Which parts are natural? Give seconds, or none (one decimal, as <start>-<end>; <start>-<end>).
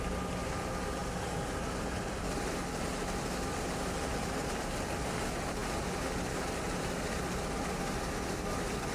0.0-8.9